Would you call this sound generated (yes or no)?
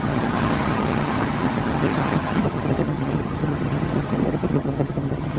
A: yes